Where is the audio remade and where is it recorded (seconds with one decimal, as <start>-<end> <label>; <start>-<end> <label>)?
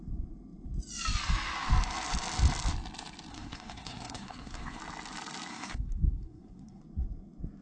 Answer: 0.0-3.3 recorded; 3.3-4.8 remade; 4.8-5.5 recorded; 5.5-6.8 remade; 6.8-7.6 recorded